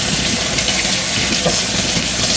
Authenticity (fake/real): real